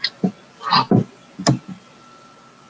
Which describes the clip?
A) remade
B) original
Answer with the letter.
B